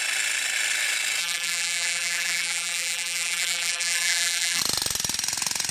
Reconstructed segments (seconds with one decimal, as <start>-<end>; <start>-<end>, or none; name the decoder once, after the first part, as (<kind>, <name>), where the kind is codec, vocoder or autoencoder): 1.2-4.6 (vocoder, BigVGAN v2)

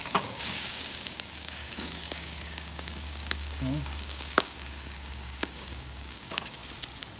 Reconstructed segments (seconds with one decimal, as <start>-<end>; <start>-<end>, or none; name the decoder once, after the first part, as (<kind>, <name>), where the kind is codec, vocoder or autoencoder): 0.0-6.6 (codec, DAC)

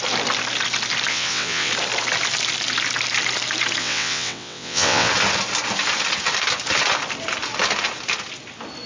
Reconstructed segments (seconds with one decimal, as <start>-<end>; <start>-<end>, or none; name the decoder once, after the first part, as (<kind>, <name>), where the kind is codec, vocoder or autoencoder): 1.1-1.7 (vocoder, WaveNeXt); 3.8-5.1

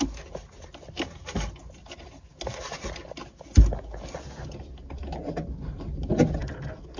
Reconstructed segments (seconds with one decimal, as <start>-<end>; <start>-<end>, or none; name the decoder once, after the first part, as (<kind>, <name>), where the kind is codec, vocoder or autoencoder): none